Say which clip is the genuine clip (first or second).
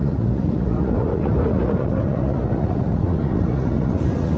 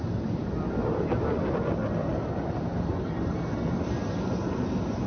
second